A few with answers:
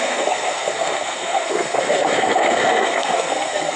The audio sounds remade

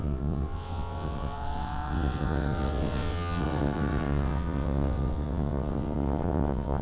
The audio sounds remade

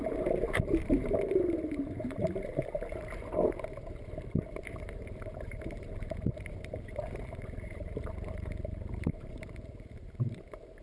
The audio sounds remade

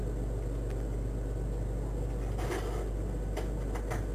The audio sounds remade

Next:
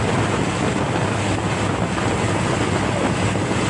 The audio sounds recorded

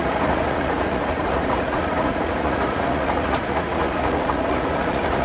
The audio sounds remade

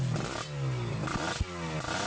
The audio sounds recorded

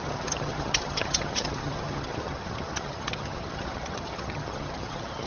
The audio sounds remade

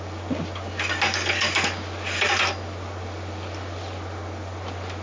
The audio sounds recorded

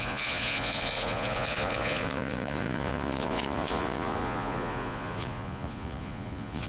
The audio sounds remade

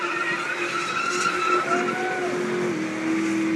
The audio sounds recorded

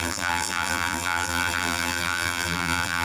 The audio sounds remade